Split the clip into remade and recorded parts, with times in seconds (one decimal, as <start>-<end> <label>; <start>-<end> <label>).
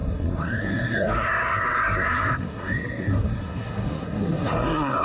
0.0-5.0 remade